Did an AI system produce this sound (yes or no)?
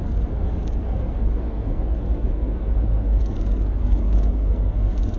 yes